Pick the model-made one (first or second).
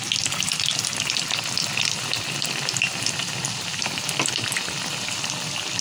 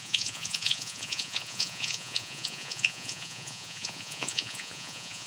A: second